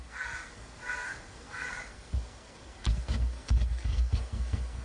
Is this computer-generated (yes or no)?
yes